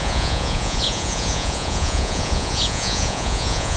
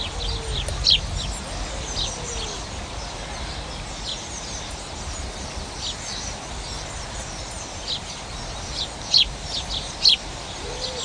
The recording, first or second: second